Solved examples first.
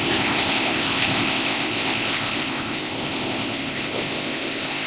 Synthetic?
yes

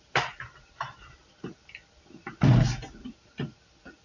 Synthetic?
no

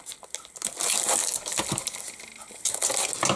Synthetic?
no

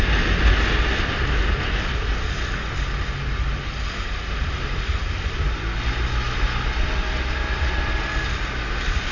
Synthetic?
no